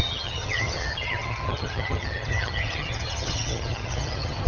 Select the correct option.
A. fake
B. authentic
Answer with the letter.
A